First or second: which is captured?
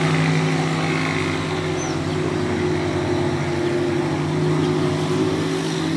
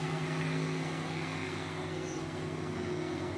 first